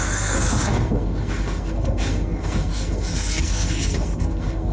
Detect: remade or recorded remade